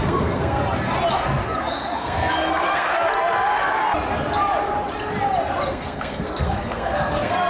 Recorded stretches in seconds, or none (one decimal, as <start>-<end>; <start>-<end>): 0.6-1.6; 2.9-5.7